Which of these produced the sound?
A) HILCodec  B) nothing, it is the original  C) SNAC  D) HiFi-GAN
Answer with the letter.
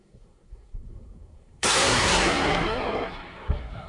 C